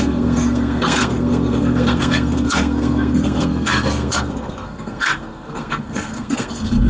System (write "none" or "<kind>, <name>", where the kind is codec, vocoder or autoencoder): codec, SNAC